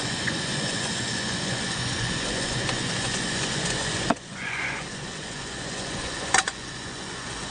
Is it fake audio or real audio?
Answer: fake